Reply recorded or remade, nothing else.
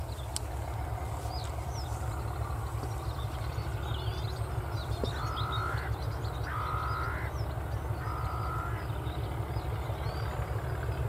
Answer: recorded